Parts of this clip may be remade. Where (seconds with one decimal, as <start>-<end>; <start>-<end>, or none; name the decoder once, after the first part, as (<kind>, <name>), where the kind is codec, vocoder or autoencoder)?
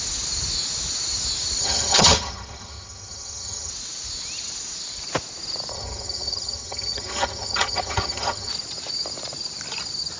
1.6-3.7 (vocoder, HiFi-GAN); 5.7-8.5